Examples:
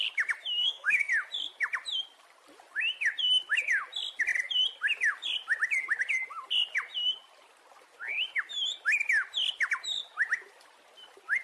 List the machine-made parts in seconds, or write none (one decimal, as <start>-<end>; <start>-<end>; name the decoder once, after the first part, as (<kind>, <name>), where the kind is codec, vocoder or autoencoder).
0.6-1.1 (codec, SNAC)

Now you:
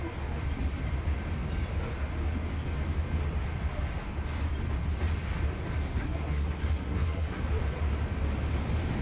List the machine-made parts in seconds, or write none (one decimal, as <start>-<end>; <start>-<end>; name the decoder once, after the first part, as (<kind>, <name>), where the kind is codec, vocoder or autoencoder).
6.0-7.4 (codec, SNAC)

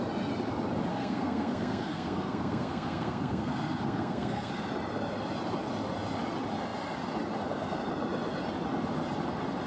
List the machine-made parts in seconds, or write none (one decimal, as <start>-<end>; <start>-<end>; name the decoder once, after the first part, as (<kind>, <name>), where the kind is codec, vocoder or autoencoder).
0.9-4.5 (codec, SNAC)

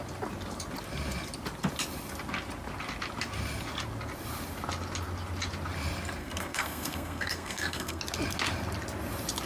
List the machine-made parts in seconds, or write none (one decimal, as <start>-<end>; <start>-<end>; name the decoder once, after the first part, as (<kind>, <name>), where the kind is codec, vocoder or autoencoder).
6.2-8.0 (codec, SNAC)